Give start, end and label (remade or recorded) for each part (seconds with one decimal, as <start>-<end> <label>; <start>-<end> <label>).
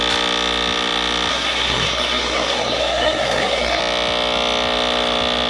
0.0-1.3 recorded; 1.3-3.8 remade; 3.8-5.5 recorded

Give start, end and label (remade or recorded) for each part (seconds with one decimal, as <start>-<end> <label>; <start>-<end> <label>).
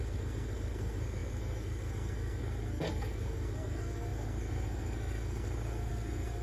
0.0-6.4 remade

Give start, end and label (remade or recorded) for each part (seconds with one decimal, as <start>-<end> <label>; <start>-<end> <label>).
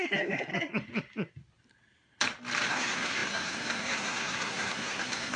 0.0-0.5 remade; 0.5-2.7 recorded; 2.7-5.4 remade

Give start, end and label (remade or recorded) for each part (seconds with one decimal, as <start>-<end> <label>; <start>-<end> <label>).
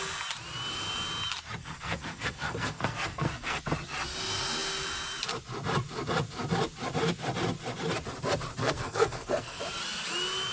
0.0-1.6 recorded; 1.6-3.6 remade; 3.6-8.6 recorded; 8.6-9.6 remade; 9.6-10.5 recorded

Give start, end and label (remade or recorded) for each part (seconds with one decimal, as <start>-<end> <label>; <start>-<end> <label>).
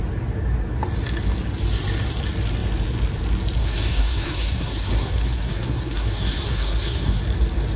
0.0-3.6 recorded; 3.6-7.2 remade; 7.2-7.8 recorded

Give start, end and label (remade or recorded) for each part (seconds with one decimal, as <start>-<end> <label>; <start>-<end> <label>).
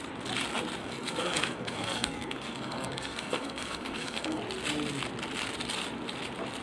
0.0-0.8 recorded; 0.8-4.4 remade; 4.4-6.6 recorded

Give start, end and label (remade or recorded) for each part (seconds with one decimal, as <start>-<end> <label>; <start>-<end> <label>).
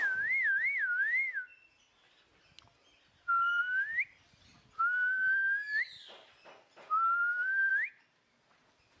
0.0-9.0 recorded